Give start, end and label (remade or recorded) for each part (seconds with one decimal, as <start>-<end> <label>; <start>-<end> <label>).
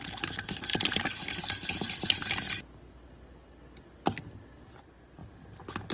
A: 0.0-5.9 recorded